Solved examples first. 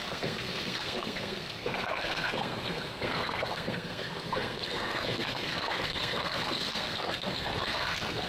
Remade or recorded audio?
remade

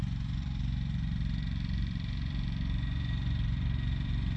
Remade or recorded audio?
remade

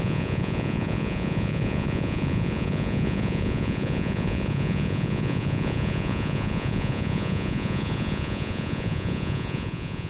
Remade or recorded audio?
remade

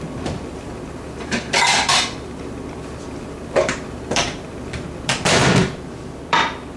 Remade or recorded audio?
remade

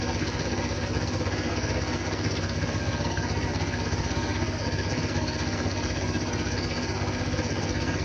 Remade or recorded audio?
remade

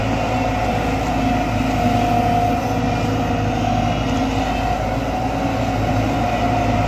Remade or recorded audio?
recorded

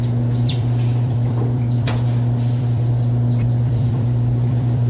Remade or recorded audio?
remade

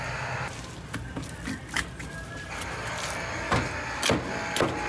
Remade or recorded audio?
recorded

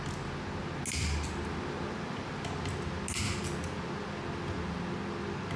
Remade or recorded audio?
recorded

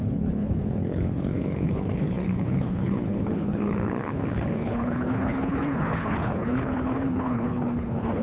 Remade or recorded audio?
remade